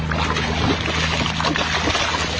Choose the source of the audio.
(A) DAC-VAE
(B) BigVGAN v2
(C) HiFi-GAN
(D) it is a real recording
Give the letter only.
D